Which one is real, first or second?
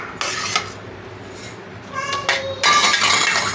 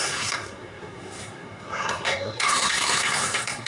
first